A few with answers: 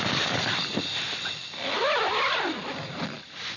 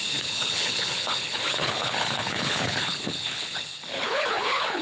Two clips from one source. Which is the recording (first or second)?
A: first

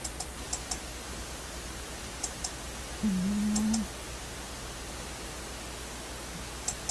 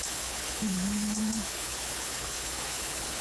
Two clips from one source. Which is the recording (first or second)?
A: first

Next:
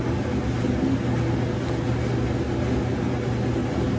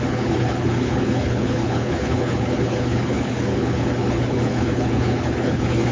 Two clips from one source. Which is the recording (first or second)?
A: first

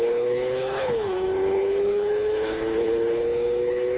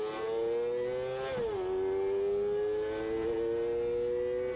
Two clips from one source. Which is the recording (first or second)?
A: second